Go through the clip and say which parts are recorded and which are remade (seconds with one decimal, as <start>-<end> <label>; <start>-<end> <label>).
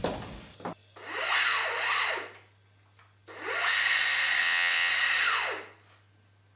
0.0-4.4 recorded; 4.4-4.9 remade; 4.9-6.6 recorded